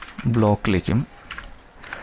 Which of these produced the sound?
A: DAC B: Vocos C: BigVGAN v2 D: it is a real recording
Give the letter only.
D